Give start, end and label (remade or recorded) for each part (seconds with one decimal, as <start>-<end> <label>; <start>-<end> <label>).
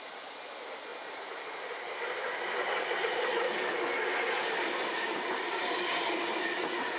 0.0-7.0 recorded